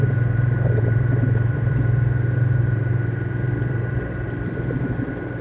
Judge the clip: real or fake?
fake